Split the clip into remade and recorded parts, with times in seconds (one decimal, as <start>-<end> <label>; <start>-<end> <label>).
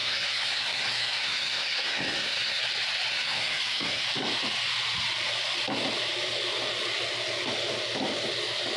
0.0-2.6 remade; 2.6-3.1 recorded; 3.1-4.0 remade; 4.0-8.8 recorded